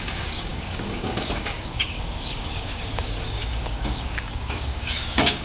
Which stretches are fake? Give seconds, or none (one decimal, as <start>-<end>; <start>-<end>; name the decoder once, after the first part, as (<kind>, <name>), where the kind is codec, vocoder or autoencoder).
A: 0.0-5.4 (codec, DAC)